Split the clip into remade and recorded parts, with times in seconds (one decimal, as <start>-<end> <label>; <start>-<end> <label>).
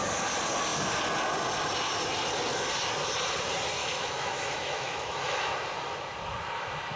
0.0-3.8 recorded; 3.8-5.5 remade; 5.5-7.0 recorded